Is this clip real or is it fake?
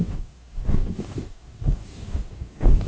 fake